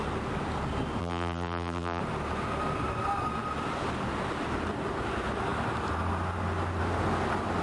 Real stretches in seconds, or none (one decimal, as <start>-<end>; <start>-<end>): 0.0-1.0; 2.0-7.6